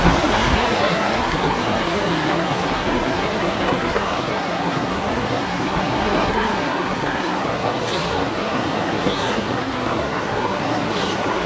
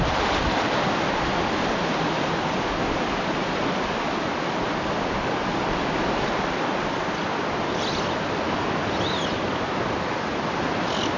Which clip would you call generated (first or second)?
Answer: first